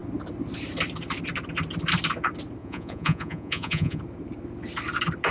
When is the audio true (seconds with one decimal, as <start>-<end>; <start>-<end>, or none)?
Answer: 0.0-2.6; 4.0-5.3